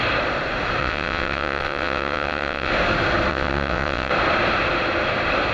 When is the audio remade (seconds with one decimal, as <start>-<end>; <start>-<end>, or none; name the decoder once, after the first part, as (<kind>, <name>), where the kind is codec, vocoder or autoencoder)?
0.8-2.7 (vocoder, WaveNeXt); 3.3-4.1